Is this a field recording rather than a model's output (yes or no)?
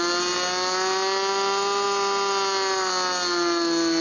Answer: yes